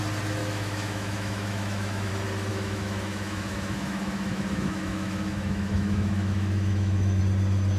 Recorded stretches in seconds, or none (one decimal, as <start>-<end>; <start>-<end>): 0.0-0.4; 2.1-2.5; 7.2-7.8